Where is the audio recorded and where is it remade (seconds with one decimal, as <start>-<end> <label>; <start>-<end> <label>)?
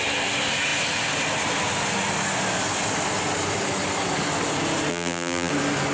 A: 0.0-4.9 recorded; 4.9-5.5 remade; 5.5-5.9 recorded